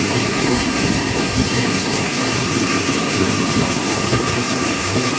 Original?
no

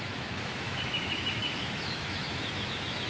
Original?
no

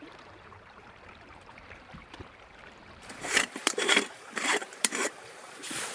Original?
no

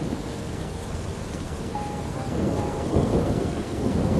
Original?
no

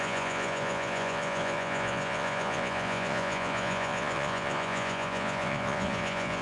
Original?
no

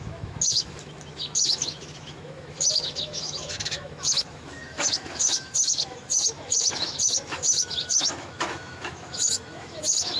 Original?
no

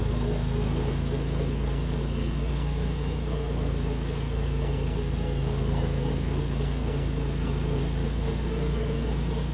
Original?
no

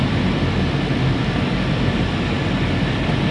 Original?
yes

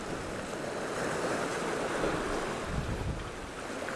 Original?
yes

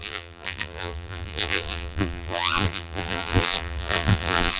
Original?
no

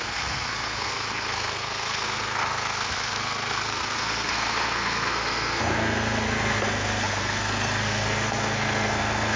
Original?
no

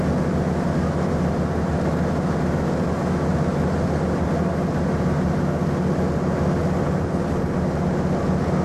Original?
yes